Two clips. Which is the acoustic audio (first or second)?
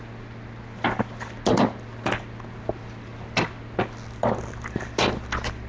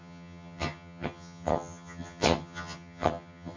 first